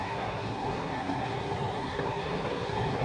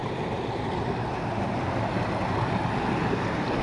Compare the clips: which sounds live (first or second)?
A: second